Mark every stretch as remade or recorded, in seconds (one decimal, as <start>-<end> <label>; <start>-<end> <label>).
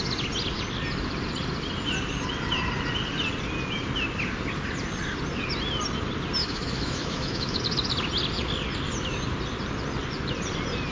0.0-6.4 recorded; 6.4-7.6 remade; 7.6-10.9 recorded